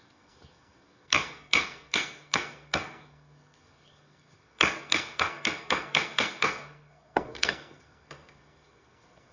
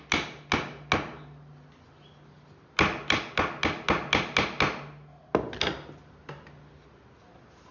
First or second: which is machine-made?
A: first